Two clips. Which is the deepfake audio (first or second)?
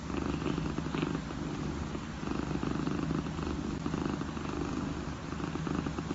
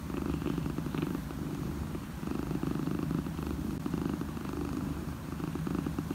second